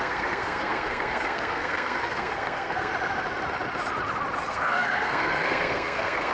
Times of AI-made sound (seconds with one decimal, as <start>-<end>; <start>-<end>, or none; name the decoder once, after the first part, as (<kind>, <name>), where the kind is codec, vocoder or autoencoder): 0.0-2.9 (codec, SNAC); 4.5-6.3